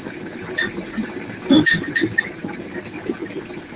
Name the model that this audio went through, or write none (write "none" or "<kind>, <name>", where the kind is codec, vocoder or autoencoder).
none